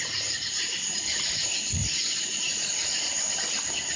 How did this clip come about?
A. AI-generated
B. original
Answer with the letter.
B